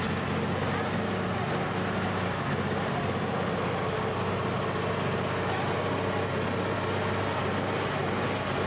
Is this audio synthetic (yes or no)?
no